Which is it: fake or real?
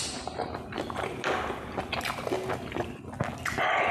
real